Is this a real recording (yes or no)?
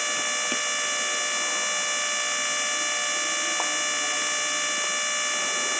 yes